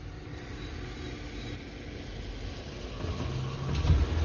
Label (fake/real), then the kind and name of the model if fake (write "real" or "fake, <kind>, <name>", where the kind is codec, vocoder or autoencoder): real